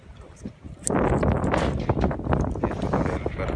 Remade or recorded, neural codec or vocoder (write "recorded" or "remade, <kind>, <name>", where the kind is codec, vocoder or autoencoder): recorded